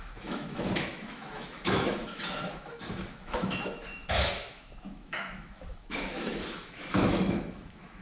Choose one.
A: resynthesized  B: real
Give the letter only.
A